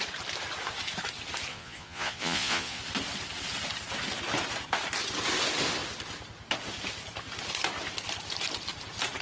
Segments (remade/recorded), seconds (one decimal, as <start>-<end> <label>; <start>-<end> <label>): 0.0-1.5 recorded; 1.5-2.8 remade; 2.8-9.2 recorded